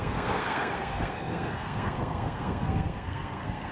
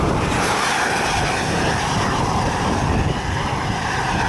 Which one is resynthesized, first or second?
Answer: first